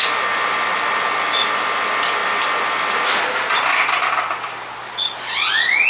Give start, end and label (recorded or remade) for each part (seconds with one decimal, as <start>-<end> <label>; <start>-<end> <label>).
0.0-5.9 recorded